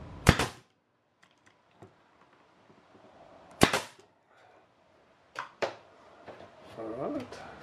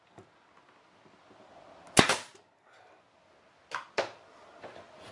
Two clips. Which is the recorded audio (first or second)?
second